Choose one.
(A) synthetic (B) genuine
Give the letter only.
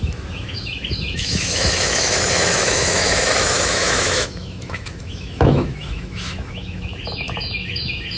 A